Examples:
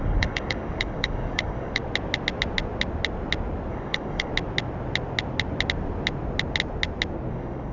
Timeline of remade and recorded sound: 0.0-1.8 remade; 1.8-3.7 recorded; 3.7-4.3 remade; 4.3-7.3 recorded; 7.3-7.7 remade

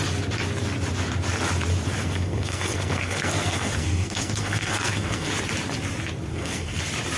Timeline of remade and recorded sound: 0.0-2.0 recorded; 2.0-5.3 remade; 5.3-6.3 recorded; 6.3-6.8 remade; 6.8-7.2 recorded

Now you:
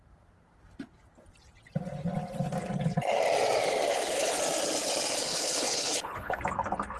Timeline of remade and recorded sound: 0.0-3.9 recorded; 3.9-4.4 remade; 4.4-5.1 recorded; 5.1-6.4 remade; 6.4-7.0 recorded

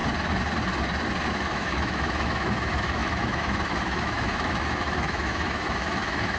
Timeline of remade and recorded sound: 0.0-1.3 recorded; 1.3-6.4 remade

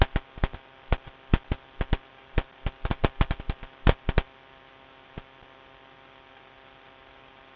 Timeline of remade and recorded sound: 0.0-7.6 recorded